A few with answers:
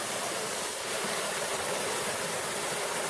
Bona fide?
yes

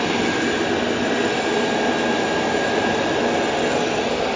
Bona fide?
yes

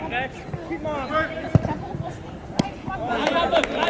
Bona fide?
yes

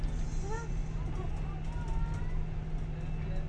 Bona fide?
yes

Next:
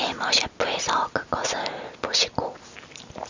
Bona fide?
yes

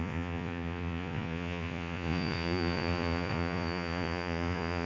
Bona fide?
no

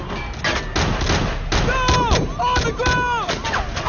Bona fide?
yes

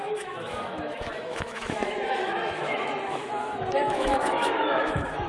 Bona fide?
no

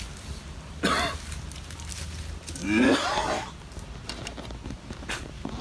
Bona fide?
yes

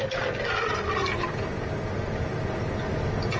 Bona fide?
yes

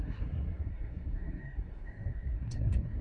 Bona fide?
no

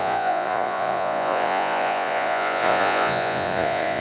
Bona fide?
no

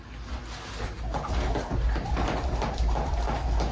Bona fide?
yes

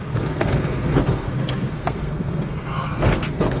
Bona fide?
no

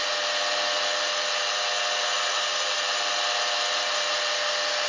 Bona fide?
yes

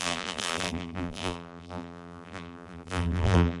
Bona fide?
no